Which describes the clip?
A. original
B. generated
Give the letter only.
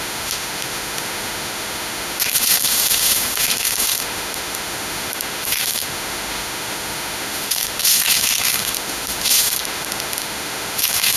B